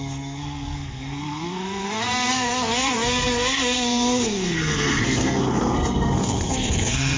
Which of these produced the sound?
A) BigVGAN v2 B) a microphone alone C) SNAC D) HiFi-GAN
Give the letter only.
C